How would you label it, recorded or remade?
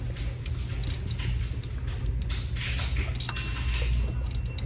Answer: recorded